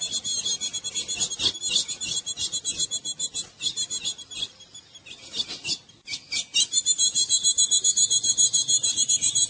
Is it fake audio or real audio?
real